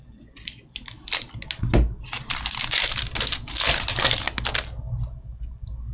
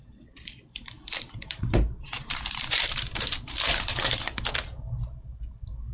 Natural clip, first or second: first